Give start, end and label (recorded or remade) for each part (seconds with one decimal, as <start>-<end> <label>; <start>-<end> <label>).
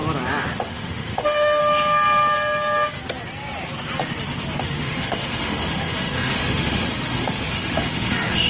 0.0-0.6 recorded; 0.6-1.6 remade; 1.6-4.6 recorded; 4.6-8.5 remade